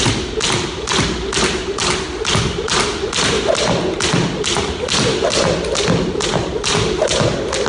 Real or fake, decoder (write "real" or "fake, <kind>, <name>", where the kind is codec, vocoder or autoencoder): real